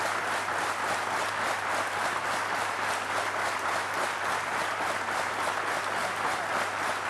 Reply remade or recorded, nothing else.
recorded